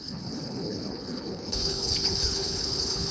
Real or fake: fake